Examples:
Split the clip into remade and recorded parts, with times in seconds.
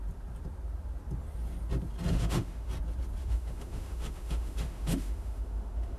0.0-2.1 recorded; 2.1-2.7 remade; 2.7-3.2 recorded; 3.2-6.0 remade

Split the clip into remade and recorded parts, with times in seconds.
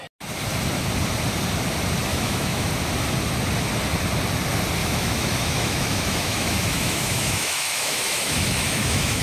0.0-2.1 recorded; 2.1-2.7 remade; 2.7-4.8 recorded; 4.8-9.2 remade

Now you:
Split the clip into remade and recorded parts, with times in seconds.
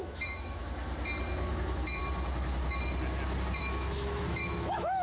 0.0-0.6 remade; 0.6-1.5 recorded; 1.5-2.0 remade; 2.0-3.6 recorded; 3.6-5.0 remade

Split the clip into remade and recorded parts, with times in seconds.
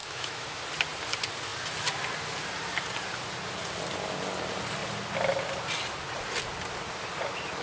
0.0-0.6 remade; 0.6-7.6 recorded